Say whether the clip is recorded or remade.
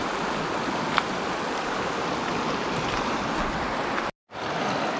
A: recorded